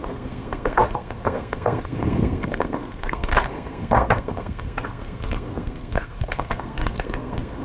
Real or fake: fake